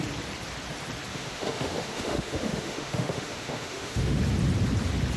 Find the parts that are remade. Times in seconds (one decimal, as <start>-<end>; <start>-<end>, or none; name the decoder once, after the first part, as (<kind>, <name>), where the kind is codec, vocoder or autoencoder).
1.1-4.2 (autoencoder, DAC-VAE)